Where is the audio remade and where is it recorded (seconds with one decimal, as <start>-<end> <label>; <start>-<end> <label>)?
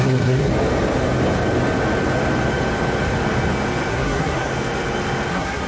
0.0-0.5 remade; 0.5-3.9 recorded; 3.9-4.5 remade; 4.5-5.3 recorded; 5.3-5.7 remade